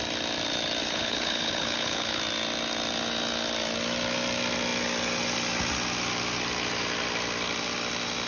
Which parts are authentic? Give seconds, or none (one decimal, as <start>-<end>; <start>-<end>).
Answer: 0.0-0.8; 2.2-8.3